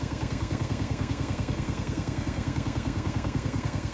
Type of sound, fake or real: fake